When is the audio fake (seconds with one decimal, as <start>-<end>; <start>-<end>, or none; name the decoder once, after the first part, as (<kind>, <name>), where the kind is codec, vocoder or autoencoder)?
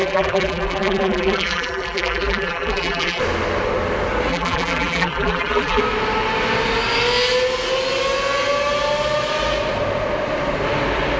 0.0-3.2 (vocoder, BigVGAN v2); 4.3-5.8